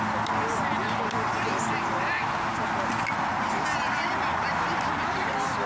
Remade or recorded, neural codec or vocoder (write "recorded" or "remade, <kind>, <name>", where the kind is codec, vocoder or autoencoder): recorded